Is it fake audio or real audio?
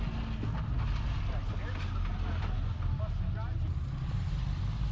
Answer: real